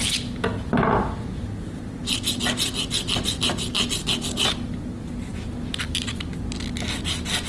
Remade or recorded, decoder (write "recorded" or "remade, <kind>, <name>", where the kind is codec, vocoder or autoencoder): recorded